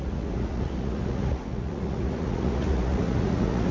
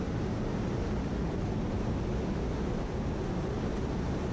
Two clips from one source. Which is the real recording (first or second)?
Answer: second